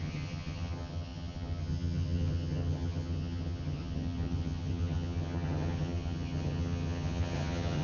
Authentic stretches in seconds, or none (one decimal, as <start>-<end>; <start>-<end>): none